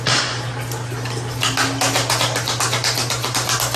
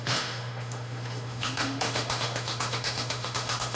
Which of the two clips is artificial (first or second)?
second